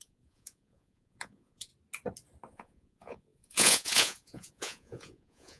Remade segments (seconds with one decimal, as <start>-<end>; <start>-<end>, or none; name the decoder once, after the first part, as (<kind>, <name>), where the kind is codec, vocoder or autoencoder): 0.0-1.7 (vocoder, Vocos); 2.5-5.6